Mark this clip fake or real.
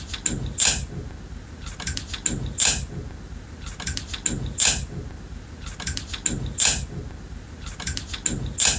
real